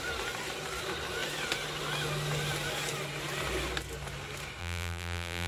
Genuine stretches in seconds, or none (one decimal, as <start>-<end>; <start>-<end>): 0.0-4.6